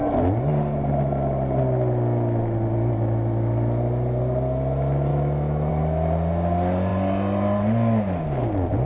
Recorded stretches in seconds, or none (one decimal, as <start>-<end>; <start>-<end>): 0.0-5.1; 5.7-8.9